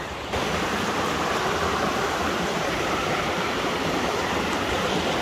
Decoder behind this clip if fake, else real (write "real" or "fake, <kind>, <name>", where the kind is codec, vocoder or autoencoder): fake, vocoder, BigVGAN v2